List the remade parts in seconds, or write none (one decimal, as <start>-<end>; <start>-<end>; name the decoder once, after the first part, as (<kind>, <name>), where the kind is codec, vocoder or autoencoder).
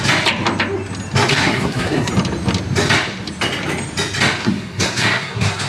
1.3-2.1 (codec, SNAC); 4.4-5.7